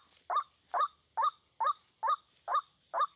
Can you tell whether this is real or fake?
real